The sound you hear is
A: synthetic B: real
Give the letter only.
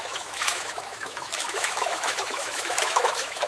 A